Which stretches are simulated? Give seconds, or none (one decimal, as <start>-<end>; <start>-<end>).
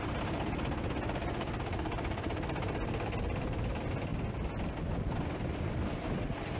none